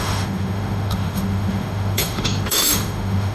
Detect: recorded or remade remade